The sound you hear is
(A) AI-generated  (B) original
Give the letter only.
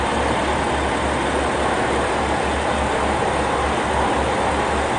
B